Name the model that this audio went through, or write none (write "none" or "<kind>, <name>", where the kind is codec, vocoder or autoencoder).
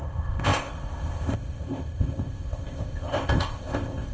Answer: codec, ZipCodec